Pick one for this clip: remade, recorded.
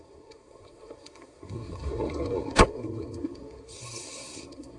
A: remade